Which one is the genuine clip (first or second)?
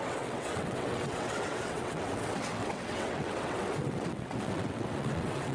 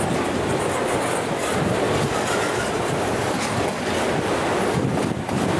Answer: second